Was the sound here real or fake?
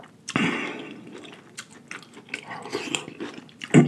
real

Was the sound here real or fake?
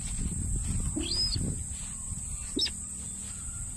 real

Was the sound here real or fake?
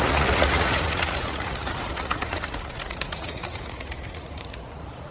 fake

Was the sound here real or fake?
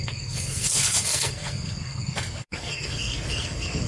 fake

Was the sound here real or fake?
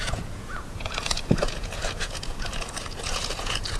fake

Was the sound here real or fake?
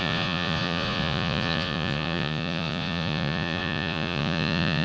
fake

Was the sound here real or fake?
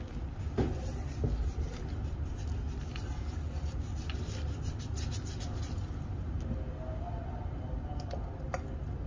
real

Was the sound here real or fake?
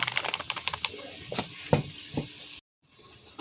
real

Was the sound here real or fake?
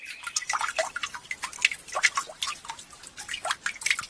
fake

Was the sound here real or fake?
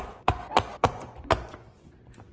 fake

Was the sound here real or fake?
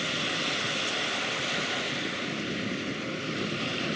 real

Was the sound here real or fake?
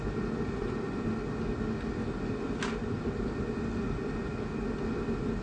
real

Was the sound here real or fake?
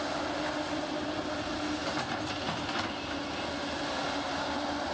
real